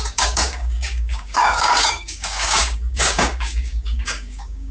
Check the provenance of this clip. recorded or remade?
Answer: remade